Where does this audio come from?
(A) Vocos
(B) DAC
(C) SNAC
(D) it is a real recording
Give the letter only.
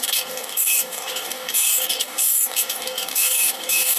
B